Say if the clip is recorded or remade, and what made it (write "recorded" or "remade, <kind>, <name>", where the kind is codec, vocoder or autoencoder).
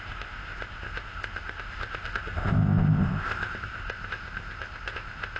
remade, codec, ZipCodec